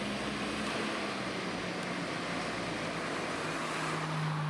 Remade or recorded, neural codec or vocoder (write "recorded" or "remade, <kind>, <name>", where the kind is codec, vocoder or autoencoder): recorded